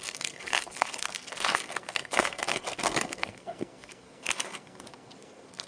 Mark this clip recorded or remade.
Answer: remade